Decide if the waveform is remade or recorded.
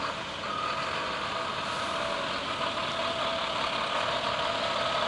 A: recorded